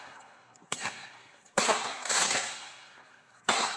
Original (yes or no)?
no